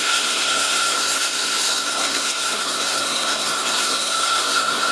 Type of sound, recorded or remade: remade